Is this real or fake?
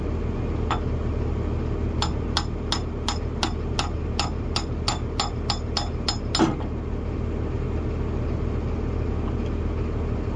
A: real